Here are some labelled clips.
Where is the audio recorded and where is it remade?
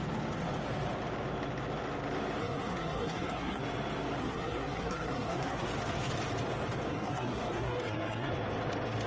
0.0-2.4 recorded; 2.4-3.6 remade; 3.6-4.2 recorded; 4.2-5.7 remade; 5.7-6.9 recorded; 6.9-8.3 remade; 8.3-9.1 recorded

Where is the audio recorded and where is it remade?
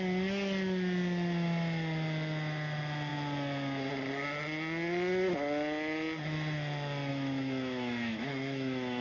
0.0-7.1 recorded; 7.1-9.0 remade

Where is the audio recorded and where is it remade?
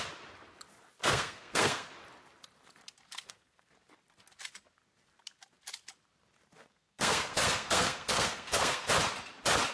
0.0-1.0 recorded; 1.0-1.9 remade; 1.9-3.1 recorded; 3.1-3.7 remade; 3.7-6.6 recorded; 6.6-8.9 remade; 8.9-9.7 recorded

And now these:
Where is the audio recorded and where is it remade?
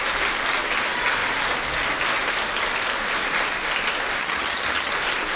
0.0-4.2 recorded; 4.2-4.9 remade; 4.9-5.4 recorded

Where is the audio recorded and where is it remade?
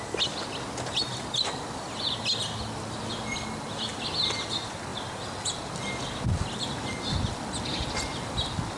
0.0-8.8 recorded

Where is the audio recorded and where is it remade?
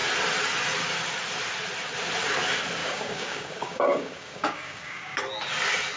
0.0-2.8 recorded; 2.8-5.2 remade; 5.2-6.0 recorded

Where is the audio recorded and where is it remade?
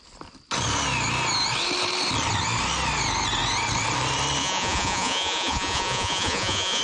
0.0-4.4 recorded; 4.4-6.8 remade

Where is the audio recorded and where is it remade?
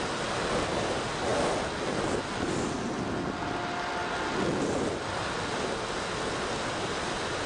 0.0-7.5 recorded